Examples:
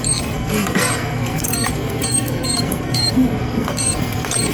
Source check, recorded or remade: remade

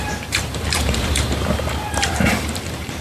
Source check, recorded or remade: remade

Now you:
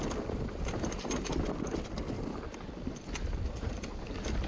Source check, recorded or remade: recorded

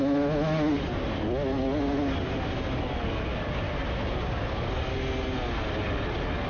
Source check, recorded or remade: recorded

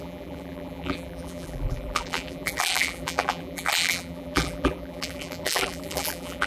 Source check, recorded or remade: remade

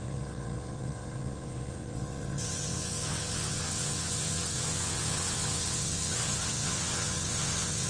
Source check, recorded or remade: remade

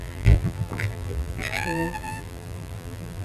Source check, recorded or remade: remade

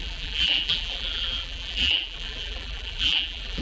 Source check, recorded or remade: remade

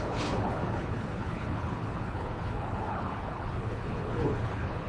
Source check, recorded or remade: remade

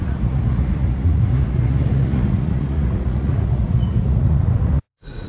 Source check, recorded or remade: remade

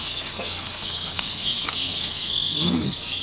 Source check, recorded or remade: remade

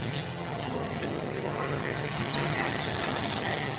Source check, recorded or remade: remade